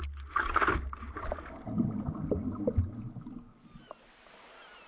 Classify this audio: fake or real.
real